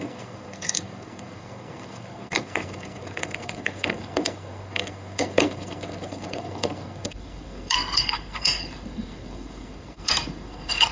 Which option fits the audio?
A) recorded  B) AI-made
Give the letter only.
B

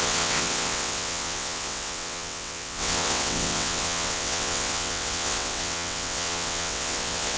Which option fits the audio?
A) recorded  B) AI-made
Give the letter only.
B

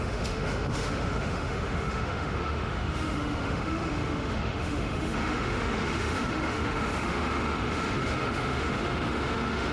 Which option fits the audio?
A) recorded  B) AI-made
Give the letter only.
B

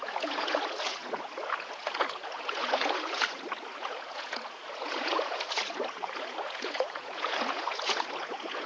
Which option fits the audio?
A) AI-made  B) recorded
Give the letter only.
A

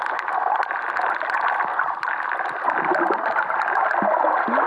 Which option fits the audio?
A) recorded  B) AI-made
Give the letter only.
A